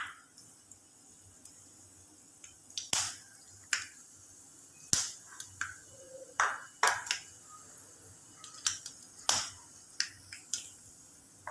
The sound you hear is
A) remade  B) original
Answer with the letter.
B